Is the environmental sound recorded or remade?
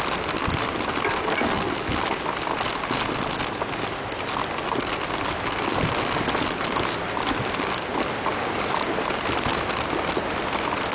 recorded